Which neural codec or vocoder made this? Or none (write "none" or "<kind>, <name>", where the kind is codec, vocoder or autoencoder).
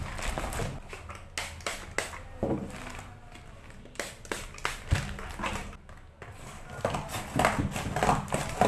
none